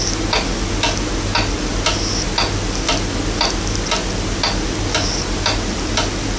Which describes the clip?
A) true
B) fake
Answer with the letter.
A